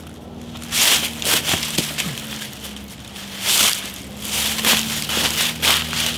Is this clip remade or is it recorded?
recorded